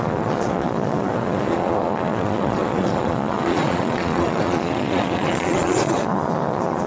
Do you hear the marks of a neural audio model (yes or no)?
yes